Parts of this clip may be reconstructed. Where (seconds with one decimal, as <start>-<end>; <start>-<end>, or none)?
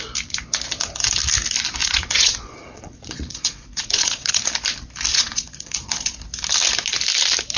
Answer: 1.8-4.4; 5.1-5.9